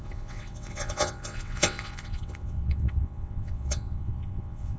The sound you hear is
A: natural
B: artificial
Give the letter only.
B